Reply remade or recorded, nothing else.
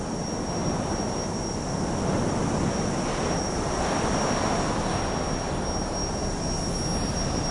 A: recorded